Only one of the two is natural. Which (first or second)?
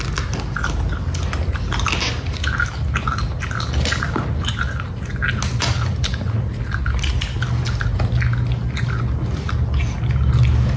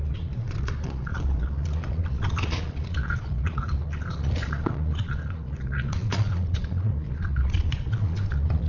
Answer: first